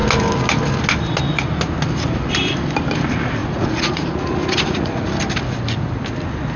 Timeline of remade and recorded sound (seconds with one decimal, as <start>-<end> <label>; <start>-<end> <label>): 0.0-3.4 recorded; 3.4-5.1 remade; 5.1-6.6 recorded